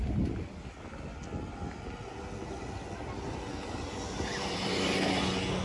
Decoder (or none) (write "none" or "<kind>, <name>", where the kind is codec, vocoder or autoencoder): none